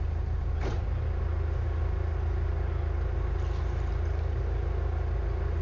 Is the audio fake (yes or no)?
no